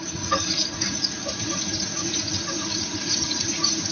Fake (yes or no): yes